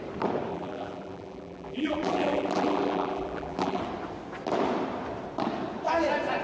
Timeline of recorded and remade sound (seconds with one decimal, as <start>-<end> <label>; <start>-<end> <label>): 0.0-0.5 recorded; 0.5-3.8 remade; 3.8-6.4 recorded